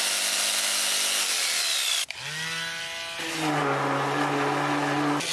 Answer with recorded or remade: recorded